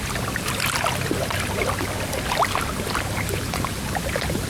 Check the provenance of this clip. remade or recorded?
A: recorded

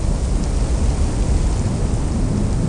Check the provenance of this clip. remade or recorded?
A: recorded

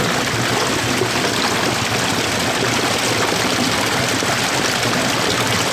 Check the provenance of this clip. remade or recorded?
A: recorded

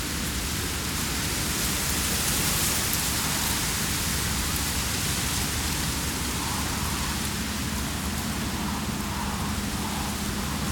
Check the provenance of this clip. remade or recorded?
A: recorded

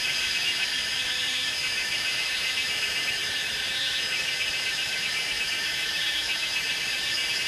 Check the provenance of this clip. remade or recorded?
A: remade